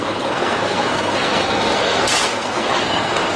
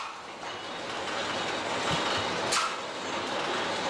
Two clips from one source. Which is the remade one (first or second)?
first